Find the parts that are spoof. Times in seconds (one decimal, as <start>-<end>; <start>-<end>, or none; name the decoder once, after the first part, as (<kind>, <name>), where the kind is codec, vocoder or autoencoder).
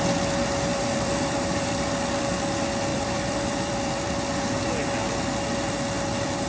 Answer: 0.7-1.9 (vocoder, BigVGAN v2); 2.9-4.2